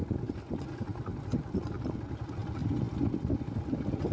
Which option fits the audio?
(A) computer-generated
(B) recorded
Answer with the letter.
B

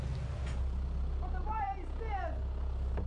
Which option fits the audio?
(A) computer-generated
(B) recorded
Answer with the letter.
B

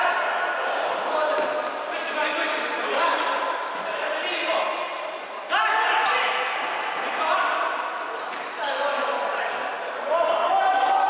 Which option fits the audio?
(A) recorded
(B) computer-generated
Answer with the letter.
A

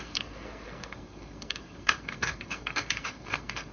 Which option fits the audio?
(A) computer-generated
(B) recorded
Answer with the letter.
A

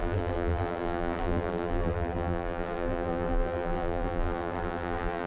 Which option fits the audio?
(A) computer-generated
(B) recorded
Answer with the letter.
A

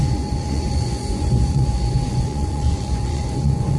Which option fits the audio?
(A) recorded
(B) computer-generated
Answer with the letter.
B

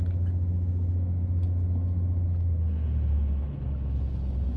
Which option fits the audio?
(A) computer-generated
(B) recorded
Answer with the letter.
B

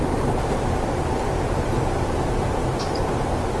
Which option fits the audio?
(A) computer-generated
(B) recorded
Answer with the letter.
A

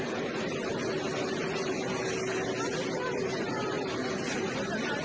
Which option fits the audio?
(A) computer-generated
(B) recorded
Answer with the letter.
B